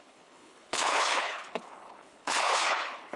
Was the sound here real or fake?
fake